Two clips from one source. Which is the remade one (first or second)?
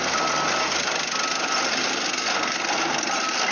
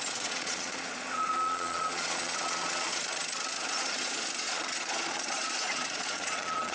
second